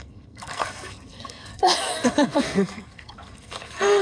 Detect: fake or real fake